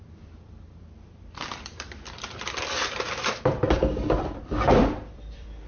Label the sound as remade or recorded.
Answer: remade